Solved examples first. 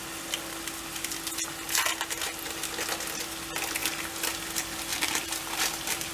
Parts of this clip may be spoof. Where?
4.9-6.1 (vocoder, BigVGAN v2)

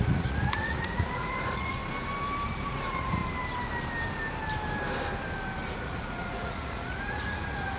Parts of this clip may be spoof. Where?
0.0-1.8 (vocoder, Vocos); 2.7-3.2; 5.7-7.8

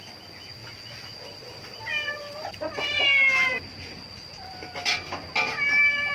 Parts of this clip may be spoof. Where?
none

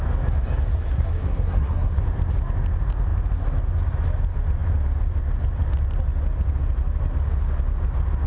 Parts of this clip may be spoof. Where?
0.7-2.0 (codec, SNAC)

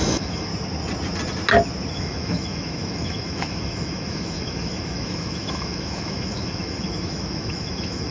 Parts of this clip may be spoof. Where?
0.0-0.5 (autoencoder, DAC-VAE); 1.9-8.1

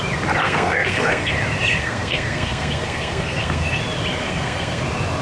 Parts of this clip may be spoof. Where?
0.4-1.3 (codec, SNAC); 1.8-3.8; 4.2-4.8

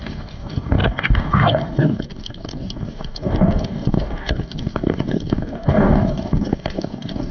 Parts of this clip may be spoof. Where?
0.0-7.3 (codec, DAC)